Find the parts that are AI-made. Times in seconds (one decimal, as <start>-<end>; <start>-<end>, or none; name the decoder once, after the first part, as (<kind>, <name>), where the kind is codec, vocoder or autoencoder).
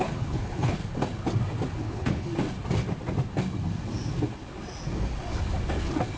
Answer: 0.0-0.8 (codec, HILCodec); 1.8-2.3